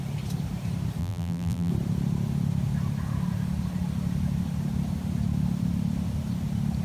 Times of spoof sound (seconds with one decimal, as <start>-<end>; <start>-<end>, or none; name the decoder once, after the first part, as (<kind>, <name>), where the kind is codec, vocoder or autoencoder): 1.0-1.7 (vocoder, BigVGAN v2)